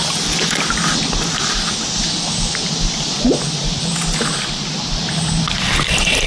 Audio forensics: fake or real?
real